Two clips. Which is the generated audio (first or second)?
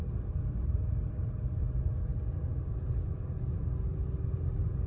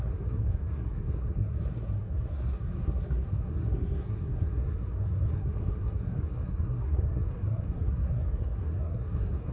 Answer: second